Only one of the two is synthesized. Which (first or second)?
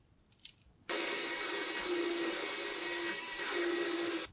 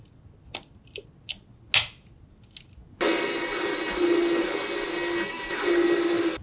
first